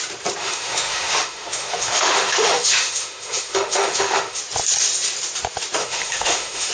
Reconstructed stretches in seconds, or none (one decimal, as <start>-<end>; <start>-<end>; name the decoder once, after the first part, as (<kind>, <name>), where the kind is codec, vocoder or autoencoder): 0.4-4.4 (autoencoder, DAC-VAE); 5.8-6.7